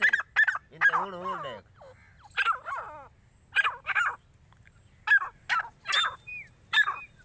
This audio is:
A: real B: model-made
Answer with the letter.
A